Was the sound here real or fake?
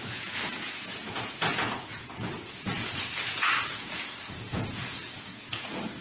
fake